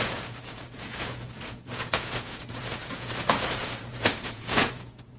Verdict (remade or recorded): remade